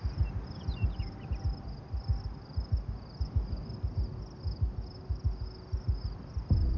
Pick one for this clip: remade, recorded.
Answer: recorded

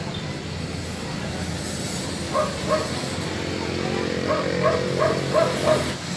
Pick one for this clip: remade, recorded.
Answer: recorded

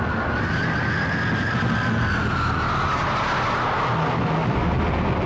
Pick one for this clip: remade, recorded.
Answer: recorded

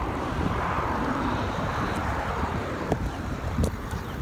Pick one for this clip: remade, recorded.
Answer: remade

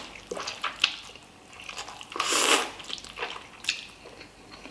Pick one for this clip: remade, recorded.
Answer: recorded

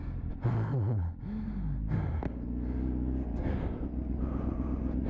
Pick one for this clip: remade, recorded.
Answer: recorded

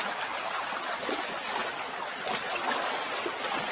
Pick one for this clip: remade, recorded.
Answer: recorded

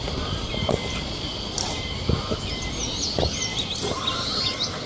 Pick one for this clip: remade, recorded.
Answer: recorded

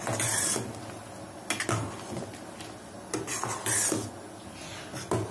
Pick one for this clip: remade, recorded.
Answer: recorded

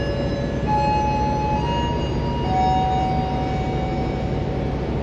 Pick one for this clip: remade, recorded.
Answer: recorded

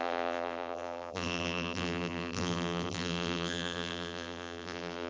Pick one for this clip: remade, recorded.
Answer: remade